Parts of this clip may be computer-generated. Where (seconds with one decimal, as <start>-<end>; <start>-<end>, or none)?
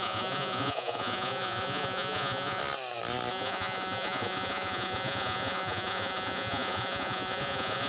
0.0-2.6; 3.3-7.9